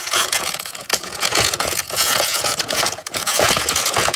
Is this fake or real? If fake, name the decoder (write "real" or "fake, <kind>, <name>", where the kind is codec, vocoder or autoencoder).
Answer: fake, vocoder, Vocos